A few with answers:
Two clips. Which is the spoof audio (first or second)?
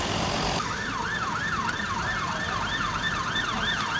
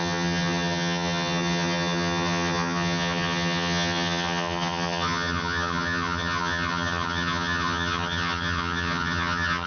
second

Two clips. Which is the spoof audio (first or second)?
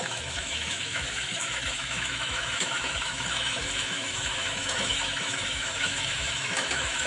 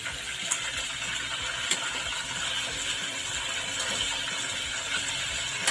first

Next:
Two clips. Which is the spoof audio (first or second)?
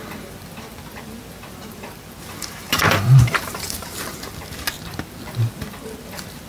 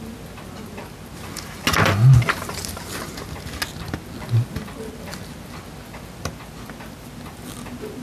first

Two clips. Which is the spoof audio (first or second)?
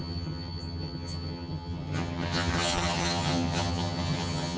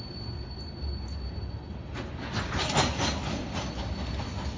first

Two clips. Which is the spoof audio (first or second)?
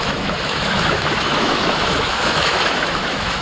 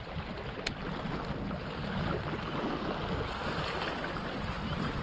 first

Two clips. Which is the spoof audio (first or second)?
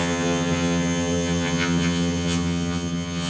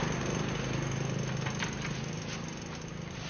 first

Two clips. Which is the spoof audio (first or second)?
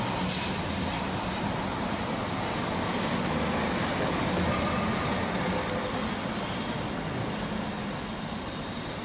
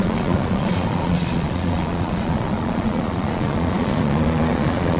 second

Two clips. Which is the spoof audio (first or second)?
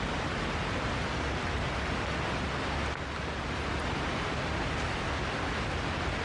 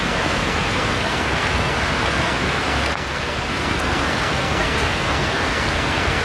second